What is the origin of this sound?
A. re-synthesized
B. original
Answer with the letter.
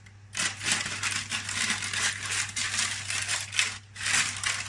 A